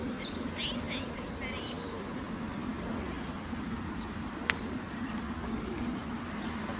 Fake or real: real